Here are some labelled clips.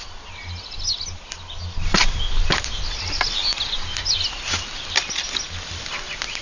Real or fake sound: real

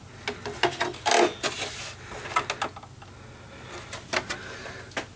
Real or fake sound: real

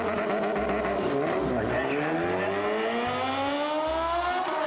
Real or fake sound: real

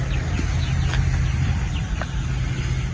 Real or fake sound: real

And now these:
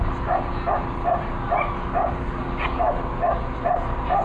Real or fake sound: real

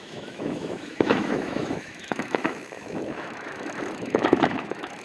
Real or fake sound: fake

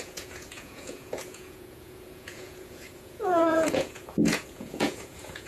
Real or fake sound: fake